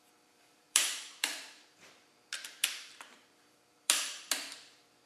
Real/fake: fake